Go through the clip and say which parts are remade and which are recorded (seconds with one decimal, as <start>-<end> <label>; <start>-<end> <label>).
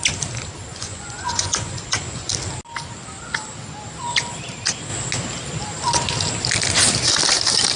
0.0-0.7 recorded; 0.7-2.3 remade; 2.3-7.8 recorded